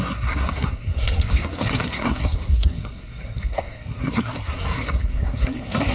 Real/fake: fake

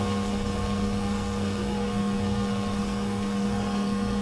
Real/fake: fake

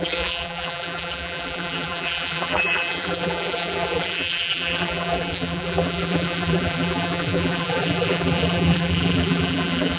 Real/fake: fake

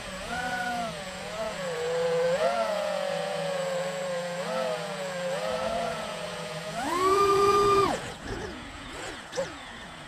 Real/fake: fake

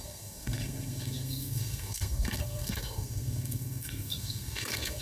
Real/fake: fake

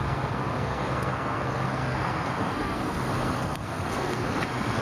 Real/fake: fake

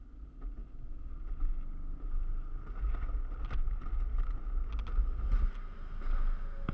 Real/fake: real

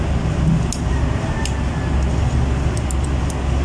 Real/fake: real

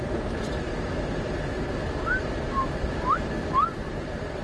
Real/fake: real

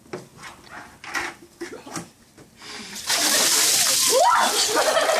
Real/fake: real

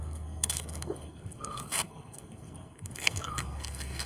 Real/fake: fake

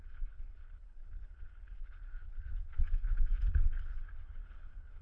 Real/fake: fake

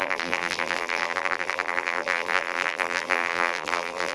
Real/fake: fake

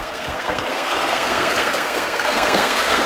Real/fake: fake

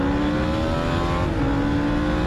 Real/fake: real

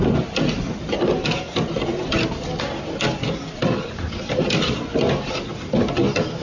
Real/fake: real